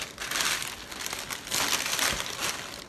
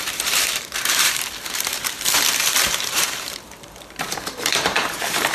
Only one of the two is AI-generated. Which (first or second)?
second